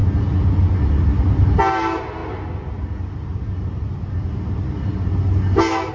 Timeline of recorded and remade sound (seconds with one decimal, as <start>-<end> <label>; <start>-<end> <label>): 0.0-5.9 recorded